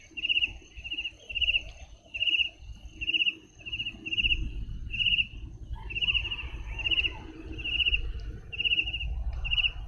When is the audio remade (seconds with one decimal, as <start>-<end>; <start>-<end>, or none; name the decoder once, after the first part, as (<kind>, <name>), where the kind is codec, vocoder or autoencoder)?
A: none